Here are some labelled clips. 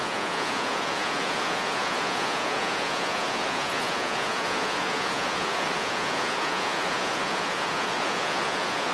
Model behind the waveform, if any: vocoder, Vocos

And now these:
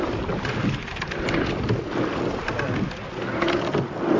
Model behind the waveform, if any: none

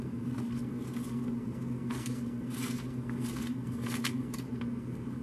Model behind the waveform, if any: codec, SNAC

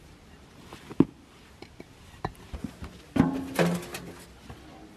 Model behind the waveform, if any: none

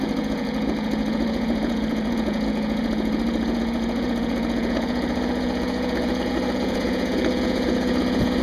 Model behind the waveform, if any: vocoder, Vocos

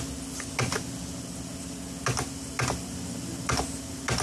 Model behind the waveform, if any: none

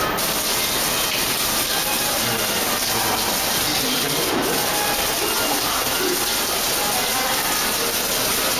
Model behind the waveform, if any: none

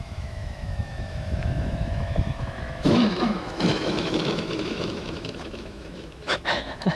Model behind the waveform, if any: autoencoder, DAC-VAE